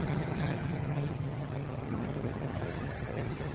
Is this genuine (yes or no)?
no